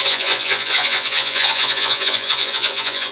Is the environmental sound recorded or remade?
remade